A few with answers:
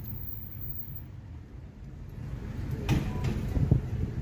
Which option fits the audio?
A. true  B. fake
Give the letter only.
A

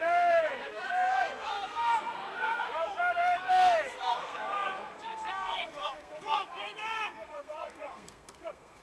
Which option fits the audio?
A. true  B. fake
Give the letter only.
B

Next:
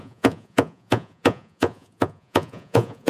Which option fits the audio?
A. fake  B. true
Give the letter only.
A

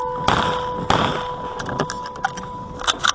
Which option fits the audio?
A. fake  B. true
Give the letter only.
B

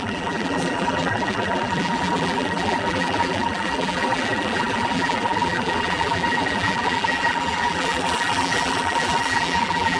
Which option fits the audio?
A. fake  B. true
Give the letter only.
A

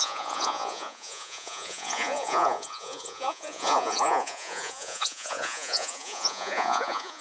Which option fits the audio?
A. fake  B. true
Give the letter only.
A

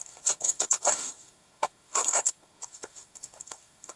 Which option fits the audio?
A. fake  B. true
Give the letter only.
A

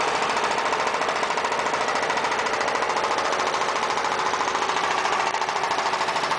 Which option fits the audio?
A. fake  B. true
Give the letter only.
A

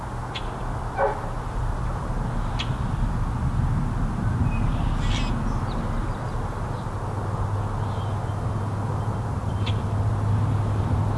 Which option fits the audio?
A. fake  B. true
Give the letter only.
B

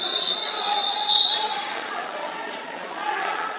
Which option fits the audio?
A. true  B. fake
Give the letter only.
B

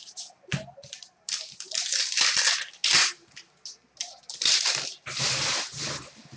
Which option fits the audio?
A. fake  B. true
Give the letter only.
B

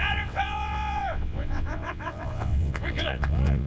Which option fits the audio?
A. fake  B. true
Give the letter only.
A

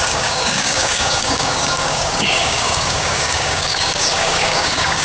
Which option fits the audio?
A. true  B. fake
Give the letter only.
B